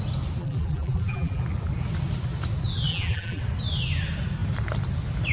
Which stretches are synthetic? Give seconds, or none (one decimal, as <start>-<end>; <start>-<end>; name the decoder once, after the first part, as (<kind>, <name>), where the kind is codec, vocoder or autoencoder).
0.4-1.4 (vocoder, BigVGAN v2); 2.9-3.4